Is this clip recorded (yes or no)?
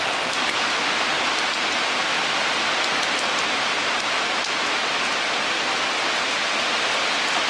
yes